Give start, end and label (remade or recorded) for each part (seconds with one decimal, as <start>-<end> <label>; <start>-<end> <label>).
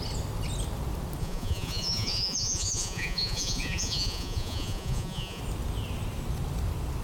0.0-1.2 recorded; 1.2-5.4 remade; 5.4-7.0 recorded